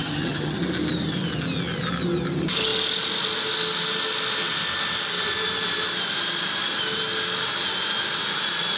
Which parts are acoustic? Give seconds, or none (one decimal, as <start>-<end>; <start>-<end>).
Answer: 0.6-8.8